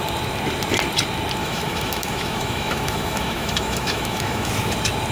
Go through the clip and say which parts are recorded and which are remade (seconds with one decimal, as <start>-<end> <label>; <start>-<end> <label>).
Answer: 0.0-1.4 recorded; 1.4-4.5 remade; 4.5-5.1 recorded